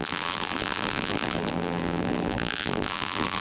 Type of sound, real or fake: fake